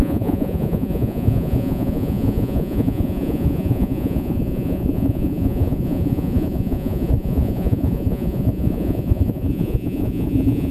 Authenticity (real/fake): fake